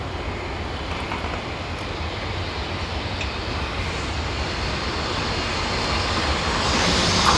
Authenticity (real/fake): real